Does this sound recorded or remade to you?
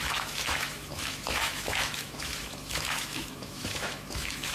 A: remade